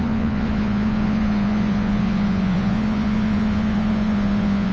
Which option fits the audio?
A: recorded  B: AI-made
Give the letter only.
B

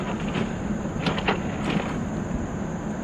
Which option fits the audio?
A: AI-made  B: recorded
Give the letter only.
B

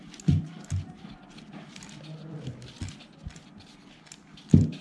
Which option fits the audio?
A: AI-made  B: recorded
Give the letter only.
A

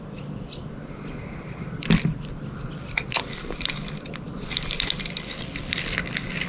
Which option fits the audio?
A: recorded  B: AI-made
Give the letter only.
B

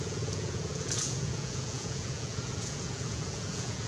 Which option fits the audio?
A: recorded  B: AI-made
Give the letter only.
B